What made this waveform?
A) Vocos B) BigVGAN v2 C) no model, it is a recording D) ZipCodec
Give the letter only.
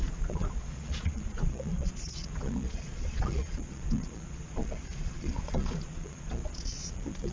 A